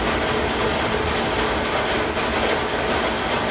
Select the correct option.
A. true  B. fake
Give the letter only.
A